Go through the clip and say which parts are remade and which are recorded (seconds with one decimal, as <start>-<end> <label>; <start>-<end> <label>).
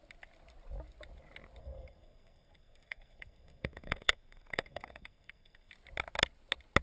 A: 0.0-1.6 recorded; 1.6-5.7 remade; 5.7-6.8 recorded